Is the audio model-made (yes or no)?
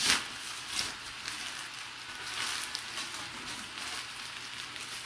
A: no